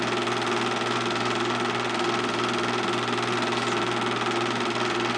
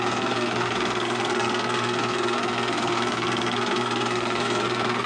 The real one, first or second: first